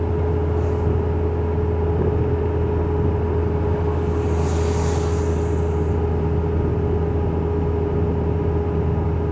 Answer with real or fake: real